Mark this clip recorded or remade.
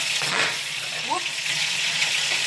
remade